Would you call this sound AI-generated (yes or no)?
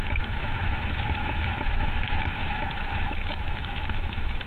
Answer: yes